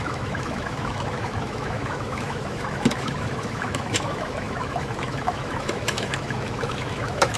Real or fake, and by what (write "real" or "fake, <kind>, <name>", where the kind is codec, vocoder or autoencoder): fake, autoencoder, DAC-VAE